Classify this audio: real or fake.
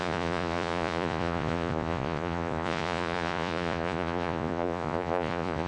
fake